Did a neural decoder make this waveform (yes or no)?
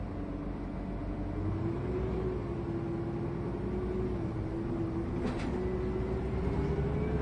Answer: no